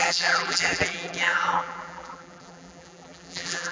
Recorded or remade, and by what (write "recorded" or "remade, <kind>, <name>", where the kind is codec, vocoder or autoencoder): remade, vocoder, BigVGAN v2